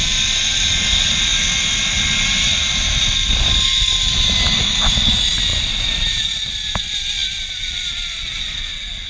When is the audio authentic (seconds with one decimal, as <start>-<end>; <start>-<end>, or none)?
0.0-9.1